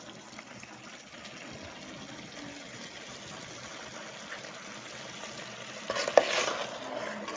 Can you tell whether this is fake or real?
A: real